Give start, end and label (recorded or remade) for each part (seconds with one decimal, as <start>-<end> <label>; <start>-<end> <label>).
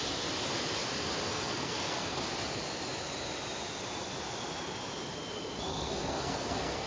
0.0-1.3 recorded; 1.3-2.2 remade; 2.2-5.7 recorded; 5.7-6.9 remade